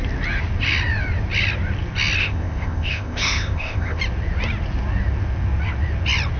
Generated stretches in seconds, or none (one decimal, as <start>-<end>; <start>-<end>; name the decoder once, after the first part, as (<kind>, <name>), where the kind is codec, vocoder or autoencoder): 2.2-4.0 (codec, ZipCodec)